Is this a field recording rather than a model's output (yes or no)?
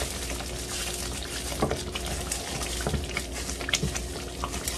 yes